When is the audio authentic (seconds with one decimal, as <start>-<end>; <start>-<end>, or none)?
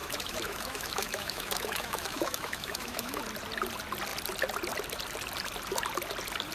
3.2-6.5